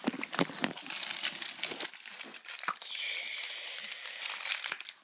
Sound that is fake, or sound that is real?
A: real